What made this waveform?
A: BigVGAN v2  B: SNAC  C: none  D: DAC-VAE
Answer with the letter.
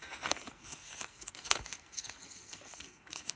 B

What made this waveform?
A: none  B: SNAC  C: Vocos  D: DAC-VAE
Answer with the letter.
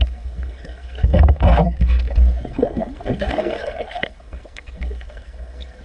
B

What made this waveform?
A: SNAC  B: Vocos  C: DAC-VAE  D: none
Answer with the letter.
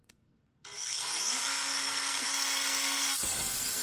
A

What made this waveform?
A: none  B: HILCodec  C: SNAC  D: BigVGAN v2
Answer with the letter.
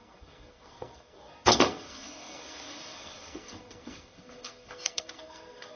C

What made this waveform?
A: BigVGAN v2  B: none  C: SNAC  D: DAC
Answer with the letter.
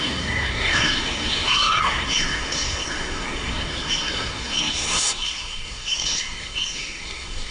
C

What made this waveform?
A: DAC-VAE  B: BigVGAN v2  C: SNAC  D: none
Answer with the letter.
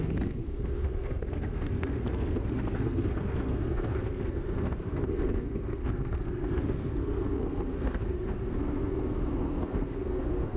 C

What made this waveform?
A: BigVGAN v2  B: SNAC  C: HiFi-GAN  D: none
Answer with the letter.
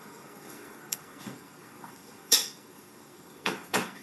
B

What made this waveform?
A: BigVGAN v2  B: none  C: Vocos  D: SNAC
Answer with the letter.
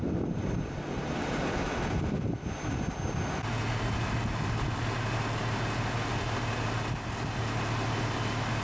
B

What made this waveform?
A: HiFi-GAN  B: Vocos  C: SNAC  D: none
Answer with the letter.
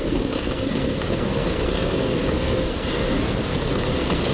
C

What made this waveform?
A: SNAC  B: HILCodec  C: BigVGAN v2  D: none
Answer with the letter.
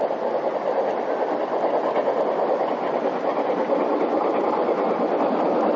D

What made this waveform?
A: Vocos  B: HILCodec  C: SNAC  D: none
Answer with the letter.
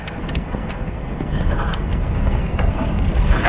C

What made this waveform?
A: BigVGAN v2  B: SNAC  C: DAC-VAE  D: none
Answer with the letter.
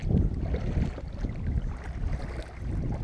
D